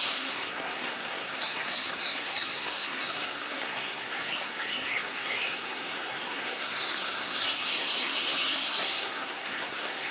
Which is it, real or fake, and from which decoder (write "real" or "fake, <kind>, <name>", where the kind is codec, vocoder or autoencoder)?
fake, codec, SNAC